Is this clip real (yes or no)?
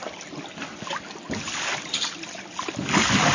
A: yes